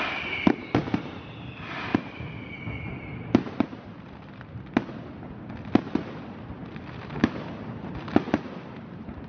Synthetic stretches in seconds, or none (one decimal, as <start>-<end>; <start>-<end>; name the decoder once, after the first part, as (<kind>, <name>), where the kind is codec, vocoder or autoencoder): none